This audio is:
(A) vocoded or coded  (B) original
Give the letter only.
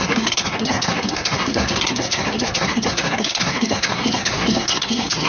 A